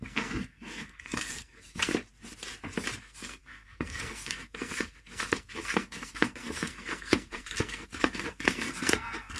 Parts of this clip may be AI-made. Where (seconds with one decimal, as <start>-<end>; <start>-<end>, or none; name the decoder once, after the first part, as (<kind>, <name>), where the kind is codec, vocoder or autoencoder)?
0.0-1.9 (codec, SNAC); 3.0-9.4